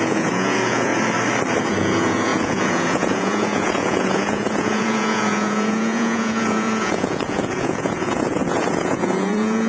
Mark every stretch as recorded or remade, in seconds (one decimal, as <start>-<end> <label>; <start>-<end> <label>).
0.0-0.9 remade; 0.9-1.6 recorded; 1.6-9.7 remade